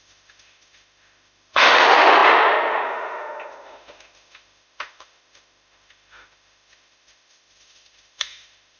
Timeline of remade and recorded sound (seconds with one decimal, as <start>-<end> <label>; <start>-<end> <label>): 0.0-8.8 remade